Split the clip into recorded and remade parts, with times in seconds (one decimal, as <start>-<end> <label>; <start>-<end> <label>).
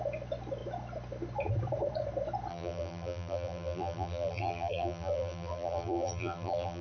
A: 0.0-2.5 recorded; 2.5-6.8 remade